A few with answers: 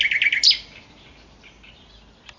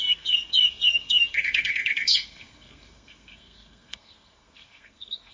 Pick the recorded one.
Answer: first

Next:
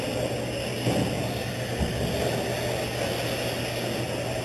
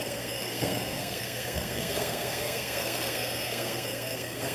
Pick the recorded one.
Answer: first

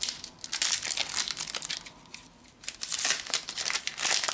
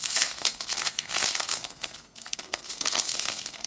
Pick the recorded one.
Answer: first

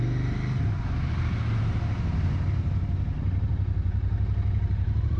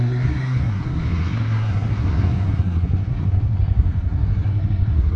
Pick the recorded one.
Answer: first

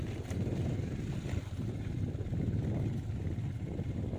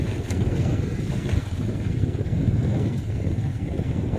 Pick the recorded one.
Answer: first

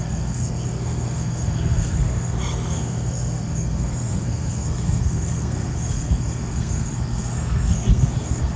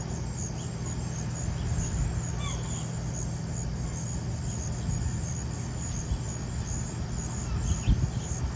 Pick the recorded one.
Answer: second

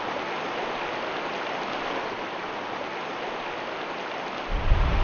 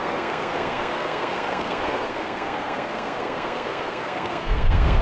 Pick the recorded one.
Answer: first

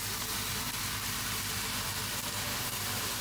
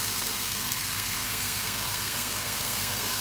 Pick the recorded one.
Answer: first